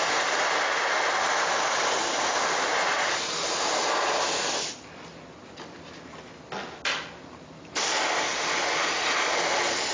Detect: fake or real real